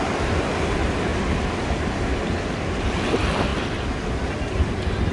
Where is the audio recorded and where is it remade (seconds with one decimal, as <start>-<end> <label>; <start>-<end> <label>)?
0.0-5.1 recorded

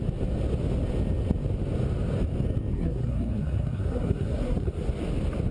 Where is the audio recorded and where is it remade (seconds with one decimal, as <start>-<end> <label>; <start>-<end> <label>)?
0.0-2.7 recorded; 2.7-4.9 remade; 4.9-5.5 recorded

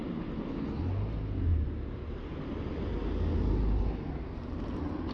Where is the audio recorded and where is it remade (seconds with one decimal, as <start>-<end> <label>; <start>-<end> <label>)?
0.0-5.1 recorded

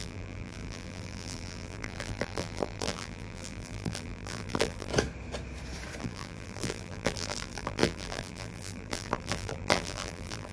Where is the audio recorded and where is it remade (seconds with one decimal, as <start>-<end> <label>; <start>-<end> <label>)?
0.0-4.9 remade; 4.9-6.0 recorded; 6.0-10.5 remade

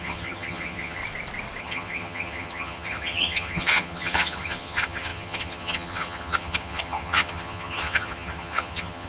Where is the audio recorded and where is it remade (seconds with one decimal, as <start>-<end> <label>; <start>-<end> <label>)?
0.0-1.0 remade; 1.0-1.6 recorded; 1.6-9.1 remade